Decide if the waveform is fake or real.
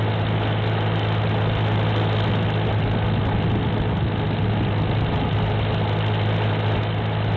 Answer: real